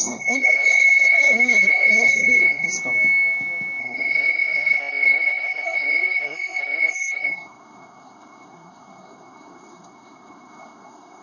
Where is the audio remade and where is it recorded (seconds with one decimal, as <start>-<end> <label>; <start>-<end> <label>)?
0.0-2.7 remade; 2.7-3.8 recorded; 3.8-11.2 remade

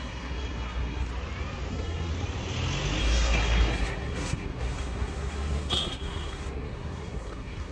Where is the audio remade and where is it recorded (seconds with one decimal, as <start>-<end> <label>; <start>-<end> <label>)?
0.0-1.1 remade; 1.1-1.7 recorded; 1.7-2.1 remade; 2.1-3.0 recorded; 3.0-7.7 remade

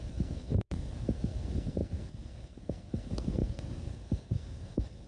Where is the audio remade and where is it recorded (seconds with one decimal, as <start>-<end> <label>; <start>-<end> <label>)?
0.0-5.1 remade

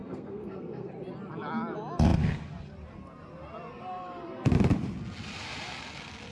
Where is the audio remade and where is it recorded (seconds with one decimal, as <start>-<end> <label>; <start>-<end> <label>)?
0.0-0.9 remade; 0.9-6.3 recorded

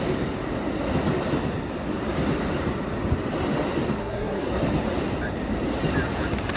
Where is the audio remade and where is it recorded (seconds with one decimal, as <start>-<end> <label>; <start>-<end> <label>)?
0.0-4.0 recorded; 4.0-4.5 remade; 4.5-6.6 recorded

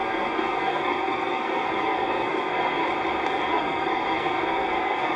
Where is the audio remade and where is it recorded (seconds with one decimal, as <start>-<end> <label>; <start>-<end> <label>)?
0.0-2.8 remade; 2.8-3.5 recorded; 3.5-5.2 remade

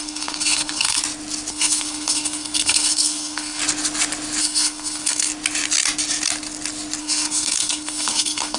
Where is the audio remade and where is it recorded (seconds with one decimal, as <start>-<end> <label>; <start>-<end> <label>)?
0.0-1.0 remade; 1.0-1.5 recorded; 1.5-3.6 remade; 3.6-4.4 recorded; 4.4-5.3 remade; 5.3-7.0 recorded; 7.0-8.6 remade